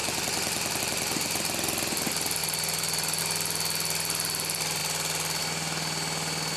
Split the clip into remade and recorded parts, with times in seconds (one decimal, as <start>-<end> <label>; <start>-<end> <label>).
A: 0.0-6.6 recorded